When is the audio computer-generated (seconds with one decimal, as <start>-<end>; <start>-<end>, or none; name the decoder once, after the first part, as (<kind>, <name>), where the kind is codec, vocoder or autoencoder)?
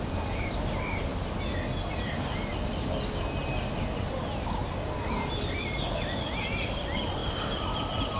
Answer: 0.0-1.1 (vocoder, BigVGAN v2); 1.9-2.5; 3.8-4.6; 5.9-7.2; 7.7-8.2